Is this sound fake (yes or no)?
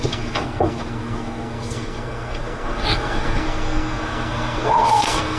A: yes